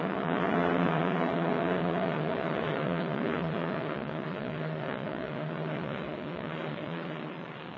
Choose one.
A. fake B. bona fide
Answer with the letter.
A